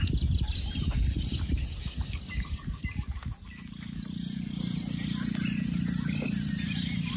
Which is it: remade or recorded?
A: recorded